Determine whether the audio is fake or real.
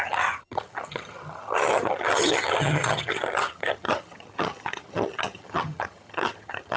fake